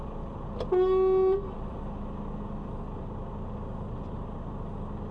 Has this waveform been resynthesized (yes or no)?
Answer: no